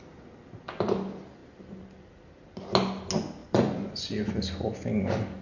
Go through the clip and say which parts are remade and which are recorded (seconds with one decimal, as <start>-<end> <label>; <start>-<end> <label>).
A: 0.0-3.4 recorded; 3.4-4.3 remade; 4.3-5.4 recorded